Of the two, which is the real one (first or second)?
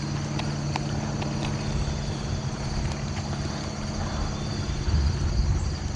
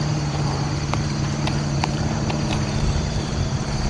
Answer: first